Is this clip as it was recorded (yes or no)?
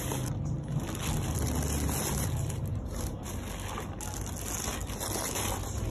yes